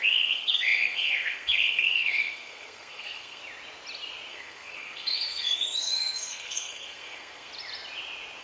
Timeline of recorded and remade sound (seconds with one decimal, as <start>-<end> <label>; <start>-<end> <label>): 0.0-3.4 remade; 3.4-4.3 recorded; 4.3-7.5 remade; 7.5-8.4 recorded